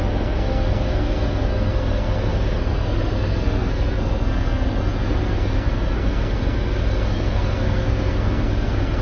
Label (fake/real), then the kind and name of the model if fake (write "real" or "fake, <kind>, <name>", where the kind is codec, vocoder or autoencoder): fake, codec, SNAC